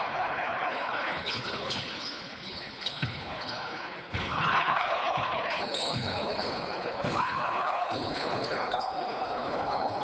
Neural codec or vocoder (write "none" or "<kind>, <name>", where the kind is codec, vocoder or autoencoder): codec, HILCodec